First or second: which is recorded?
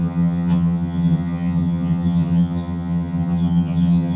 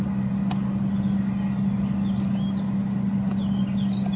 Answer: second